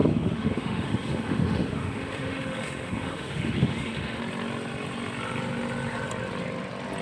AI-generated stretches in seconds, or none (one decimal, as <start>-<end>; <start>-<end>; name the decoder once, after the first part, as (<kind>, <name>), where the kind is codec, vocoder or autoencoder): 0.0-4.2 (autoencoder, DAC-VAE)